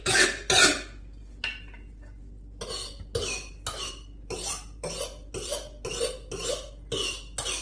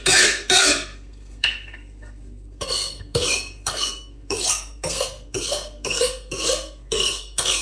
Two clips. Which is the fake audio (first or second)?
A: second